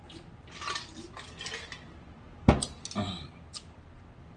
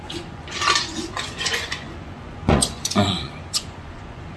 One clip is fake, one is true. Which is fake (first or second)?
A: second